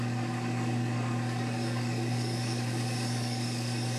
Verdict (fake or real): fake